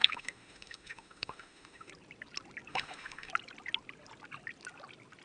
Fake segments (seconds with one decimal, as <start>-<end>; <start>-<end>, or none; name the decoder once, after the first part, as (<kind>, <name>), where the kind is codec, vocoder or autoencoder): 0.0-1.9 (autoencoder, DAC-VAE); 2.7-3.3